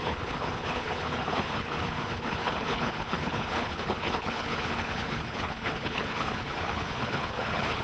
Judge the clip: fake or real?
fake